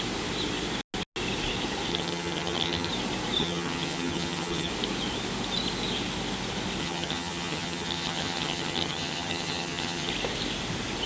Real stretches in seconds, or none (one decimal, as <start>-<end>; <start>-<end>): 0.0-1.9; 2.9-3.4; 4.7-6.8; 10.1-11.1